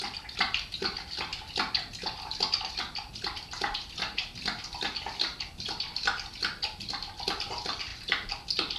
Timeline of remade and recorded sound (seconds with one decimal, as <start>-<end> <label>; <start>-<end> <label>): 0.0-8.8 recorded